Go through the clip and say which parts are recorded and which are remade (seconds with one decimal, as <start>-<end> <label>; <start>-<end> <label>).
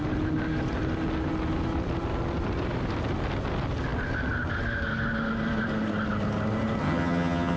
0.0-6.8 recorded; 6.8-7.6 remade